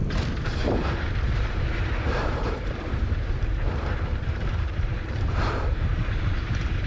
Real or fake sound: fake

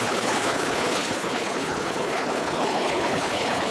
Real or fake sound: fake